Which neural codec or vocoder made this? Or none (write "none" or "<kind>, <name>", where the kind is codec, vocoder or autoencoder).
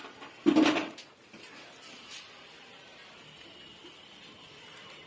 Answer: none